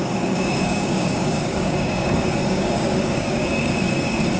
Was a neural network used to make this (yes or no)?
yes